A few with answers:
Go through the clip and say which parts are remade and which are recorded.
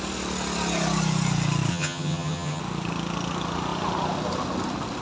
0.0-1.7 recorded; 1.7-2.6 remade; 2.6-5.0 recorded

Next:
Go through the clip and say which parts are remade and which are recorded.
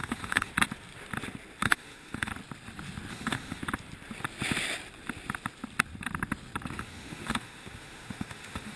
0.0-0.5 remade; 0.5-1.6 recorded; 1.6-2.3 remade; 2.3-3.1 recorded; 3.1-3.6 remade; 3.6-6.8 recorded; 6.8-8.8 remade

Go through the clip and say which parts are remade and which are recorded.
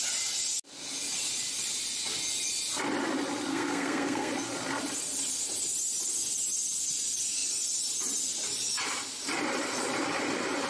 0.0-3.5 recorded; 3.5-4.3 remade; 4.3-10.7 recorded